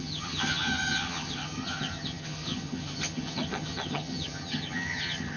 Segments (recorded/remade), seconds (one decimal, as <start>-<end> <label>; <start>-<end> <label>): 0.0-5.4 remade